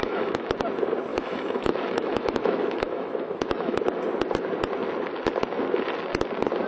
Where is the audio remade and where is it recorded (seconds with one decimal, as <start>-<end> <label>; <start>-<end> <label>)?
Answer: 0.0-0.5 remade; 0.5-1.1 recorded; 1.1-3.8 remade; 3.8-6.7 recorded